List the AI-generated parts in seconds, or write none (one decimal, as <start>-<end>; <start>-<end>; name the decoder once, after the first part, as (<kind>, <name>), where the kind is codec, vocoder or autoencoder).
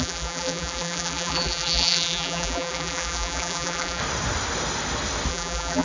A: 0.0-4.0 (vocoder, BigVGAN v2); 5.3-5.8